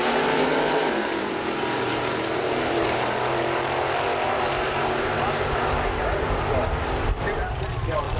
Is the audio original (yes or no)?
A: no